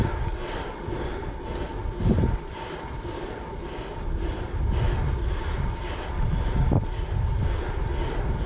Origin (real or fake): real